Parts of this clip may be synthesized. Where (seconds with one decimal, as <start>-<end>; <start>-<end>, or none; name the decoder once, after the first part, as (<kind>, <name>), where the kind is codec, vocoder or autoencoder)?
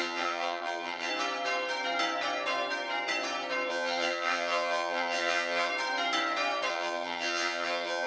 0.0-1.1 (vocoder, HiFi-GAN); 3.7-5.7; 6.7-8.1